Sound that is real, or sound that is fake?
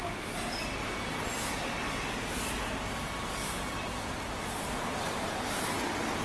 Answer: real